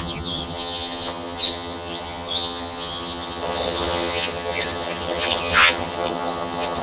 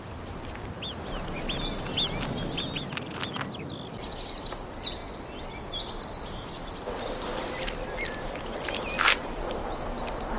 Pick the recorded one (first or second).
second